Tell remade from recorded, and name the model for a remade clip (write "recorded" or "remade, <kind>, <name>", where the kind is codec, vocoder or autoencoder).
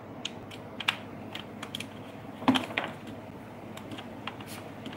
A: recorded